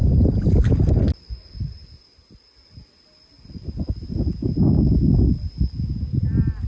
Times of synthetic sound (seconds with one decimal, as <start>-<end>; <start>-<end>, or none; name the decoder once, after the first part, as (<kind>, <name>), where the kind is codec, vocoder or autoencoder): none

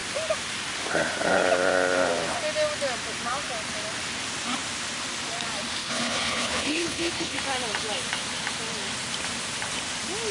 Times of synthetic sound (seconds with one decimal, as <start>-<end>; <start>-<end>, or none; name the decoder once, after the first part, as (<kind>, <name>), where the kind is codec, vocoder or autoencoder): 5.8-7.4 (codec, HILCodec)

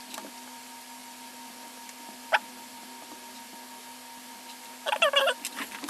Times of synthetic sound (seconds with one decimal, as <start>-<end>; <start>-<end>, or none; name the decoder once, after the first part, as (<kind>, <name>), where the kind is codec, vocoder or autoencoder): none

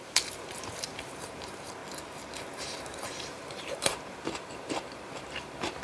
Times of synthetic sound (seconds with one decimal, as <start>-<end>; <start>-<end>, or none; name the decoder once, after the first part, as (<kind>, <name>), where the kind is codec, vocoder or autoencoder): 0.0-1.8 (vocoder, BigVGAN v2); 2.6-5.8

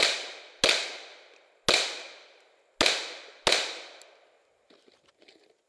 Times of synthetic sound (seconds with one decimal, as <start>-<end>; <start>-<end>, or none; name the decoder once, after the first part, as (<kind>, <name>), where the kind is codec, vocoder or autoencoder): none

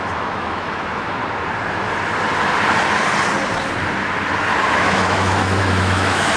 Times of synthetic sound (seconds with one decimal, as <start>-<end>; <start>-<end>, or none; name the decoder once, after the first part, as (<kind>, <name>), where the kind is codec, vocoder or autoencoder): 0.0-1.2 (autoencoder, DAC-VAE); 4.7-6.4

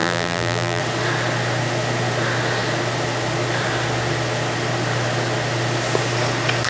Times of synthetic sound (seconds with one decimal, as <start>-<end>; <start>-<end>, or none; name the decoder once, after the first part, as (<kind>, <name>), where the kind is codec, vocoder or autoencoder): 0.0-0.8 (vocoder, BigVGAN v2)

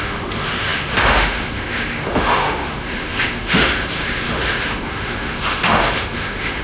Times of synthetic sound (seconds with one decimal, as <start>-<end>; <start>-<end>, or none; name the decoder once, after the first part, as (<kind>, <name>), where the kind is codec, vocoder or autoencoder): 0.0-6.6 (autoencoder, DAC-VAE)